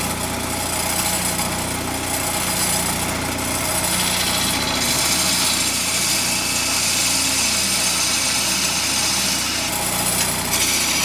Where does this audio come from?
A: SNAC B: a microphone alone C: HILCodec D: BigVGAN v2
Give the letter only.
B